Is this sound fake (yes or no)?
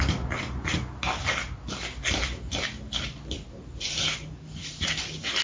no